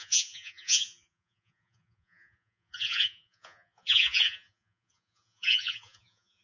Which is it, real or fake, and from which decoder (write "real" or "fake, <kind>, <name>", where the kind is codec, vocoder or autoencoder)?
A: fake, vocoder, Vocos